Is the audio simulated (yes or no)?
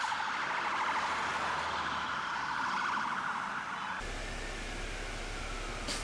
no